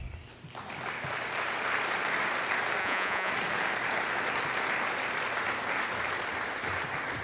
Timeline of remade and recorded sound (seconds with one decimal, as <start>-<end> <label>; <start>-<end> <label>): 0.0-2.8 recorded; 2.8-3.3 remade; 3.3-7.2 recorded